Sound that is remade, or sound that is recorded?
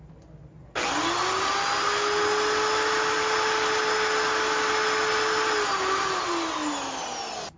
recorded